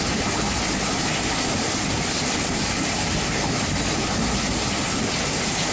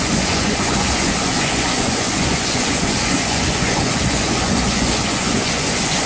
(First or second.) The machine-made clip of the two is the second